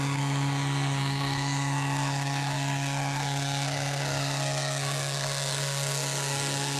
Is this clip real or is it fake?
fake